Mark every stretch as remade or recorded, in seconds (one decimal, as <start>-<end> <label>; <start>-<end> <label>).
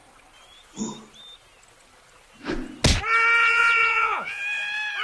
0.0-3.4 recorded; 3.4-4.4 remade; 4.4-5.0 recorded